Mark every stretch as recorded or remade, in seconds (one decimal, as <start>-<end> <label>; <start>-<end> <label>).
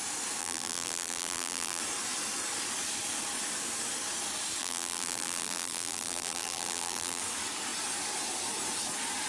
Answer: 0.0-0.4 recorded; 0.4-1.8 remade; 1.8-4.6 recorded; 4.6-7.2 remade; 7.2-9.3 recorded